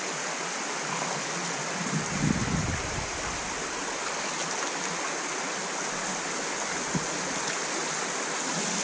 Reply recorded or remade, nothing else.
recorded